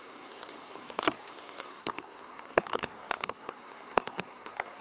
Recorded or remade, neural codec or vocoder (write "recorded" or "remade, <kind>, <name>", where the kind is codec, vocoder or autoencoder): remade, codec, SNAC